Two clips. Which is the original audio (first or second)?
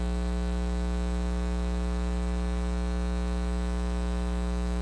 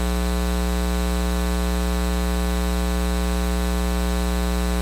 second